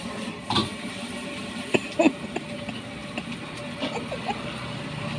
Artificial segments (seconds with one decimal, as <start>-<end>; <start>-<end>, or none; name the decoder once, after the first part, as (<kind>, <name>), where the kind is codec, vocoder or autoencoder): 0.4-2.4 (vocoder, BigVGAN v2); 3.0-3.7